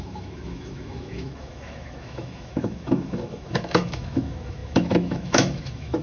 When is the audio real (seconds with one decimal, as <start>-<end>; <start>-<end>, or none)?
none